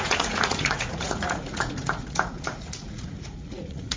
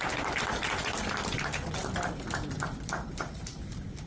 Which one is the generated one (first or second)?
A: first